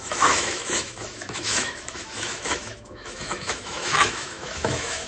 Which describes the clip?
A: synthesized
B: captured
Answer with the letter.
A